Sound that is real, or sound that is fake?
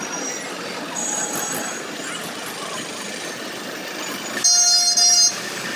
real